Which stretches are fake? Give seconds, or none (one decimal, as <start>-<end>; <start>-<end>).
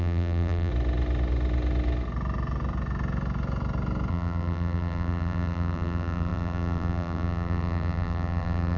0.0-0.7; 4.1-8.8